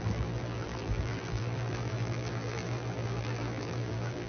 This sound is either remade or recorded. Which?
remade